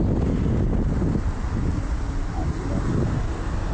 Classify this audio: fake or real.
real